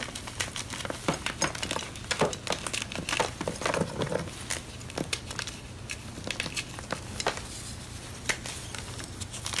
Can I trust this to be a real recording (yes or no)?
yes